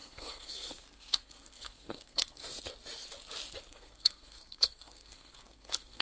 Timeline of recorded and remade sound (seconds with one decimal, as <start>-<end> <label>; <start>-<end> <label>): 0.0-2.5 remade; 2.5-3.6 recorded; 3.6-6.0 remade